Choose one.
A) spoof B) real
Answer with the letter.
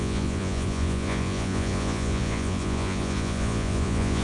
A